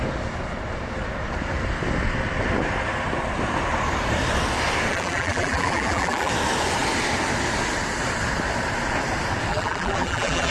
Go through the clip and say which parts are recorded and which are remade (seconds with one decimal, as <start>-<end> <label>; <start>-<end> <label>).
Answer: 0.0-4.9 recorded; 4.9-6.3 remade; 6.3-9.5 recorded; 9.5-10.5 remade

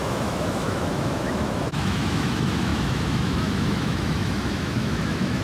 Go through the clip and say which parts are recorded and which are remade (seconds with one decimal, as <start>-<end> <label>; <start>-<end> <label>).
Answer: 0.0-5.4 remade

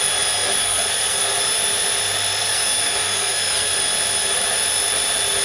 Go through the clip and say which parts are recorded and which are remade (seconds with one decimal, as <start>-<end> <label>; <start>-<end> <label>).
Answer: 0.0-0.6 recorded; 0.6-1.4 remade; 1.4-2.4 recorded; 2.4-3.7 remade; 3.7-5.4 recorded

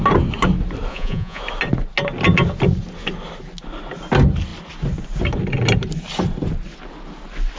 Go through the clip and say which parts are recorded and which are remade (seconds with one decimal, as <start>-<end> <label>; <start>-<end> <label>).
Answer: 0.0-0.9 recorded; 0.9-1.4 remade; 1.4-7.6 recorded

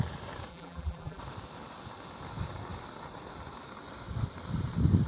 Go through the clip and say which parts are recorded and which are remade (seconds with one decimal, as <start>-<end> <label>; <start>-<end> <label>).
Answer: 0.0-0.5 recorded; 0.5-1.2 remade; 1.2-5.1 recorded

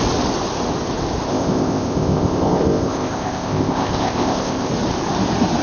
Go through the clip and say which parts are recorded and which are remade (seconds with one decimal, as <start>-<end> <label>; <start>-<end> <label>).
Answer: 0.0-1.3 recorded; 1.3-4.7 remade; 4.7-5.6 recorded

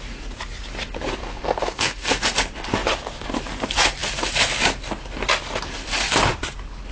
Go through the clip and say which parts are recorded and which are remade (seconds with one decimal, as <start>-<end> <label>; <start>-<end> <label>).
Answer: 0.0-1.2 recorded; 1.2-2.2 remade; 2.2-6.9 recorded

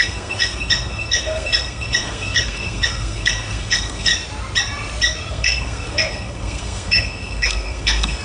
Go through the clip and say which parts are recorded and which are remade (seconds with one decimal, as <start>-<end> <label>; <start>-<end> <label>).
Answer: 0.0-4.1 remade; 4.1-5.3 recorded; 5.3-8.2 remade